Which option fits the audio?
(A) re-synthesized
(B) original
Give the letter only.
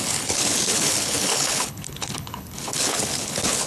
A